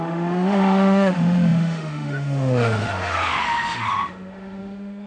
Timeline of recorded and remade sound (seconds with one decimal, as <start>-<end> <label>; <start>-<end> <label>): 0.0-5.1 remade